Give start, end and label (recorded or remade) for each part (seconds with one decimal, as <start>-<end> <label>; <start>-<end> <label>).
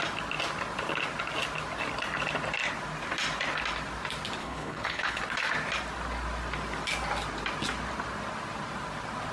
0.0-4.4 recorded; 4.4-5.2 remade; 5.2-9.3 recorded